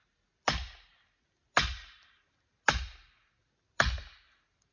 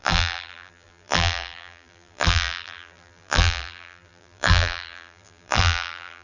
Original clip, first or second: first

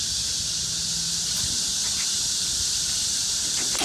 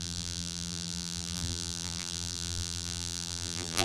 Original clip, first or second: first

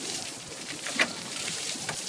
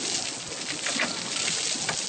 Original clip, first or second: second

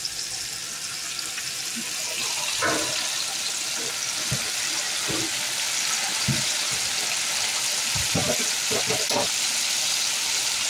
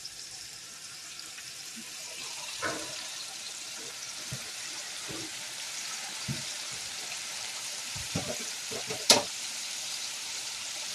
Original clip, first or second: first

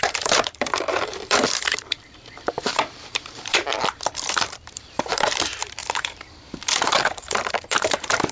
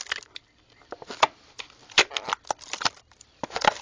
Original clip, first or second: second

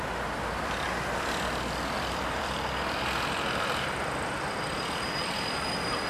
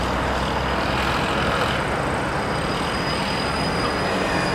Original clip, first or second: second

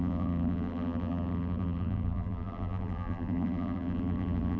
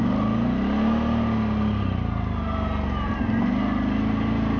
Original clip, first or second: second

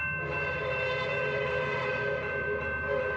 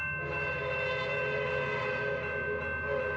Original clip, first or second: second